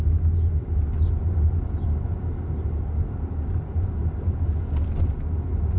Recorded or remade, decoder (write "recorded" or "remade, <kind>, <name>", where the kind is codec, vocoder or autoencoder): recorded